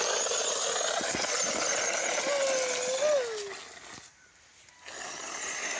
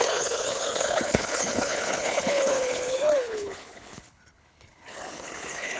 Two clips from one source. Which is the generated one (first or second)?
second